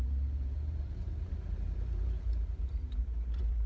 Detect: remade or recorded remade